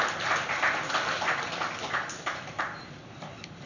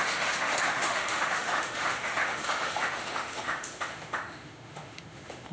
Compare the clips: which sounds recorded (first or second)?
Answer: first